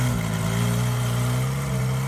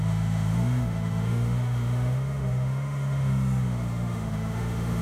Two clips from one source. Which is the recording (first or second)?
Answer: first